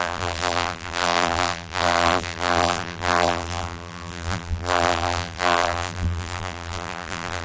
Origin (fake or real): fake